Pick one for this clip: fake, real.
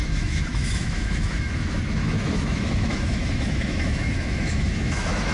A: fake